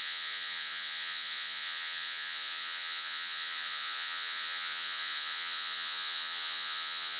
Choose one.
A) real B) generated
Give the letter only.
B